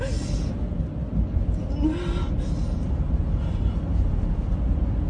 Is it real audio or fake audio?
real